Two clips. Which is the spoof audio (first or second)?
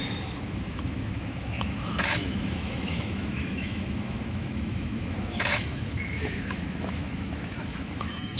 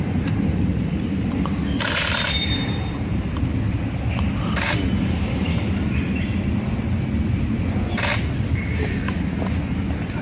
first